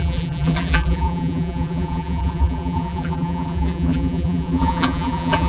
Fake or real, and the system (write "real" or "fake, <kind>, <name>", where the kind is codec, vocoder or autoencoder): fake, vocoder, BigVGAN v2